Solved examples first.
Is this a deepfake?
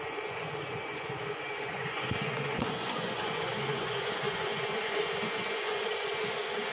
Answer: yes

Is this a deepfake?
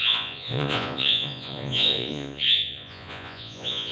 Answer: yes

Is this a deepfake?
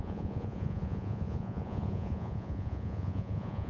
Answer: yes